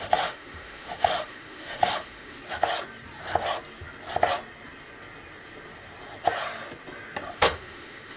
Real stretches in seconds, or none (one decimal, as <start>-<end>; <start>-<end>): 2.4-7.3